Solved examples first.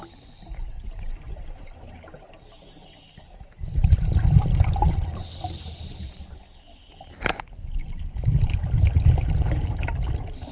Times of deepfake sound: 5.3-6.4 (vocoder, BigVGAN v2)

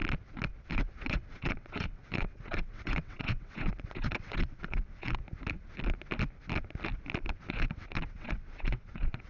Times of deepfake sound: 0.7-5.2 (vocoder, WaveNeXt); 7.4-9.3

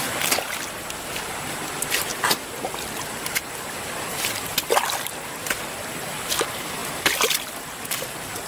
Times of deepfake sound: 0.0-2.1 (vocoder, BigVGAN v2); 5.7-8.5